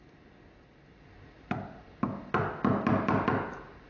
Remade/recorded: recorded